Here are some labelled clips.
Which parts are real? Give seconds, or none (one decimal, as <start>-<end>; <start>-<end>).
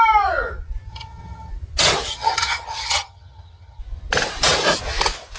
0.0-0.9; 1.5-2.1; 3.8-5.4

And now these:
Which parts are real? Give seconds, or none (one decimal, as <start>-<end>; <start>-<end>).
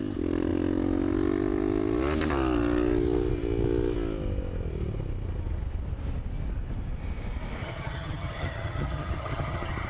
0.0-7.6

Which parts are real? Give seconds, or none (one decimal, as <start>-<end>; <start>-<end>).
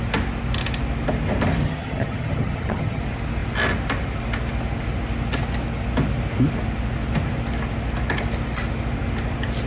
0.0-1.6; 3.0-9.7